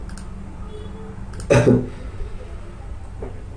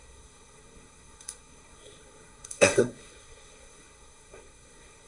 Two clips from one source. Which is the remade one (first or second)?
second